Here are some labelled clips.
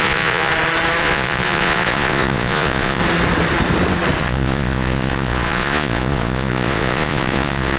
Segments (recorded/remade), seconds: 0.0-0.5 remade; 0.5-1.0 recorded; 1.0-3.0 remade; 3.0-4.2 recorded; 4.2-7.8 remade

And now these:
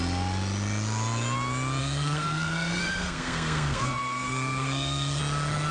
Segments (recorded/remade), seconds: 0.0-1.8 recorded; 1.8-5.2 remade; 5.2-5.7 recorded

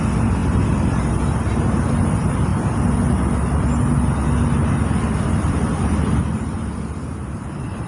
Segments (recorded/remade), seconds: 0.0-0.4 remade; 0.4-1.1 recorded; 1.1-2.5 remade; 2.5-5.2 recorded; 5.2-7.9 remade

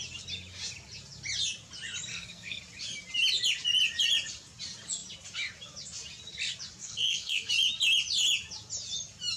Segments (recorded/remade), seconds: 0.0-2.1 recorded; 2.1-2.6 remade; 2.6-6.8 recorded; 6.8-7.5 remade; 7.5-9.4 recorded

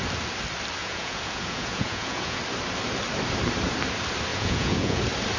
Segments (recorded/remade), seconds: 0.0-0.8 recorded; 0.8-2.4 remade; 2.4-4.3 recorded; 4.3-5.0 remade; 5.0-5.4 recorded

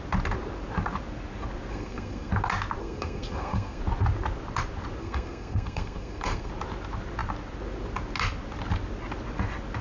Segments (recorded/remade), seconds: 0.0-1.7 recorded; 1.7-2.3 remade; 2.3-2.8 recorded; 2.8-3.8 remade; 3.8-5.0 recorded; 5.0-6.5 remade; 6.5-9.8 recorded

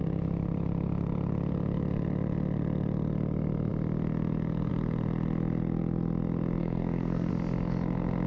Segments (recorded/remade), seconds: 0.0-6.6 recorded; 6.6-7.3 remade; 7.3-8.3 recorded

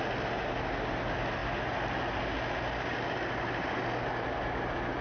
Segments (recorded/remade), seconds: 0.0-5.0 recorded